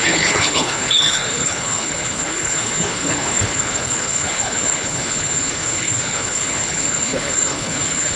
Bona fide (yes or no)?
no